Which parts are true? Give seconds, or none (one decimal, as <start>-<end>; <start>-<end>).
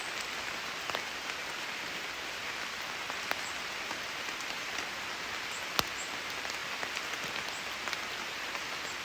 0.0-9.0